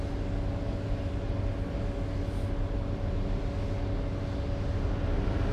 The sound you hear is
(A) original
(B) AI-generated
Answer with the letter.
A